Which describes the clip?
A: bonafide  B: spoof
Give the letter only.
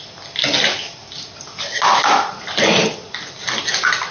A